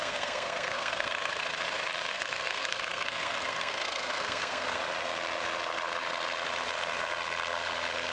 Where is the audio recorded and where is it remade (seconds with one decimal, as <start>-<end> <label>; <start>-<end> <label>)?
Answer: 0.0-1.4 remade; 1.4-2.1 recorded; 2.1-4.8 remade; 4.8-8.1 recorded